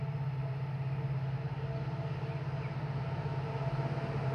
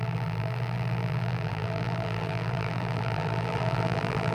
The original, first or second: first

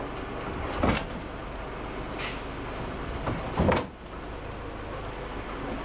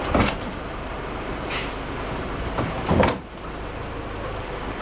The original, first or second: first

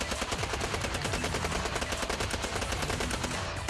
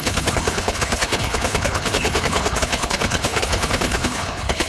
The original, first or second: first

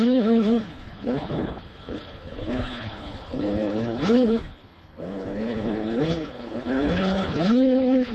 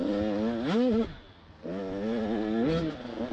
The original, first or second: second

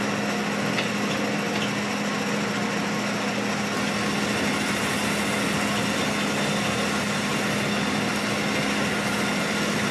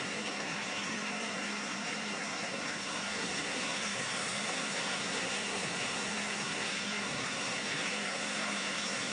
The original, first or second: first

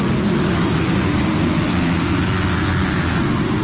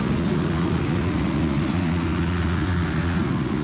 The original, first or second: first